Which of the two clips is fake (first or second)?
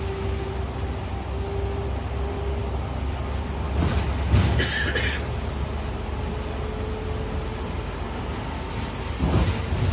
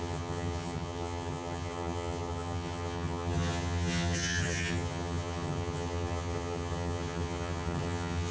second